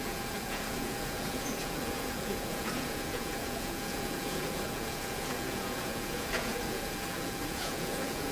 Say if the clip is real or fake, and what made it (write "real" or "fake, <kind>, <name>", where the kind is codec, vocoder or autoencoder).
fake, vocoder, Vocos